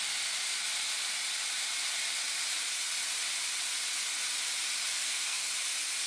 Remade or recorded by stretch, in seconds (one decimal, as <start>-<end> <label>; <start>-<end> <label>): 0.0-4.9 recorded; 4.9-5.5 remade; 5.5-6.1 recorded